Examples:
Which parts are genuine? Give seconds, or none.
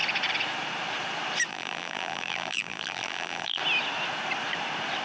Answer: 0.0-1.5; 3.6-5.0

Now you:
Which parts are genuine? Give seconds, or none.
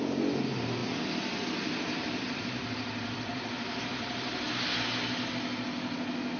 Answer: 0.0-0.8; 4.5-6.4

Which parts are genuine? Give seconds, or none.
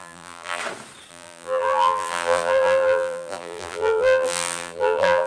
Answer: 0.6-1.1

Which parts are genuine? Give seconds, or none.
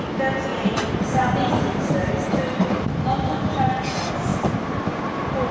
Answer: 0.0-0.5; 2.1-4.3; 5.0-5.5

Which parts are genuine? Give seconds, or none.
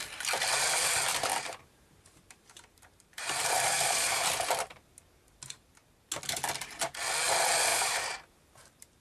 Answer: 0.0-1.3; 4.8-7.7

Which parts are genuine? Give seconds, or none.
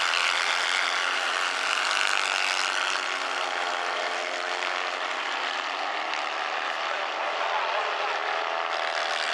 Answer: 0.0-9.3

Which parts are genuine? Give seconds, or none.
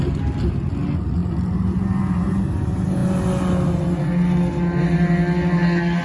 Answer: 0.0-6.0